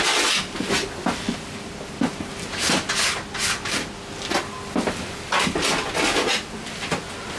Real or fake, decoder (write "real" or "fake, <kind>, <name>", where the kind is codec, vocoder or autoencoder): real